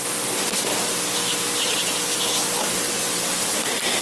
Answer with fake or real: real